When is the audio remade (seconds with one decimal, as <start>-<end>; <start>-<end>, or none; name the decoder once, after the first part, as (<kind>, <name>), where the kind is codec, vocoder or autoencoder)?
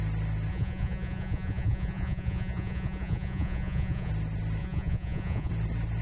0.5-4.1 (vocoder, Vocos); 4.6-5.5